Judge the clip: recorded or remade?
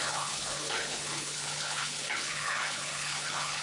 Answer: remade